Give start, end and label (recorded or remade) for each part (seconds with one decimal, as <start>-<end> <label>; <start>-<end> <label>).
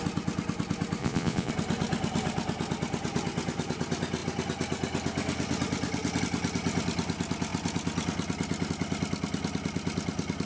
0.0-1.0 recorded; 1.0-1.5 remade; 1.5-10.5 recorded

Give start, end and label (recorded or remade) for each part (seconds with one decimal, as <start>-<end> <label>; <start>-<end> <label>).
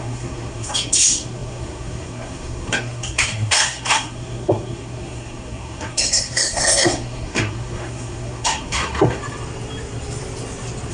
0.0-9.2 remade; 9.2-10.9 recorded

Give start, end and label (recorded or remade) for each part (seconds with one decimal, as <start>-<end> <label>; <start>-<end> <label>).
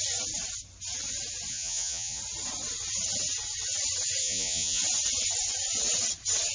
0.0-1.5 recorded; 1.5-2.2 remade; 2.2-4.2 recorded; 4.2-4.8 remade; 4.8-6.5 recorded